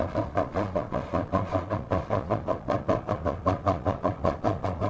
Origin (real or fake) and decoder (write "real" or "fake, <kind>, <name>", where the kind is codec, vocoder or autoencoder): fake, vocoder, Vocos